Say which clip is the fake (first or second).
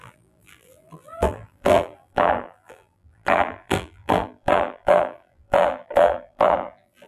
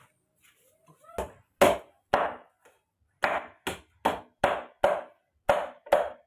first